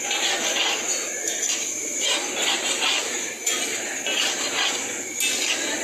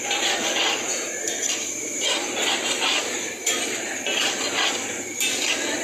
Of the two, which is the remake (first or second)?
second